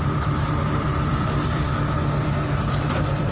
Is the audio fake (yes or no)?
yes